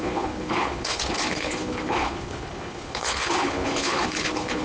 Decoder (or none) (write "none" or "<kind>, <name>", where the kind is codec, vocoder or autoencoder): codec, HILCodec